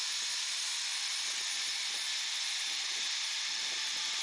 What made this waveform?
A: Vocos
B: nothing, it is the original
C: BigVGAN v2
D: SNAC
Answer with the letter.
B